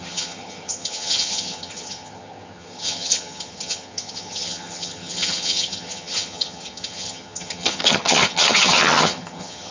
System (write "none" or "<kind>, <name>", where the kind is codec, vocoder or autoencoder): vocoder, HiFi-GAN